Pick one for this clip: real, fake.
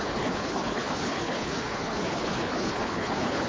fake